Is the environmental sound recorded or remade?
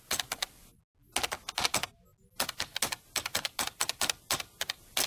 recorded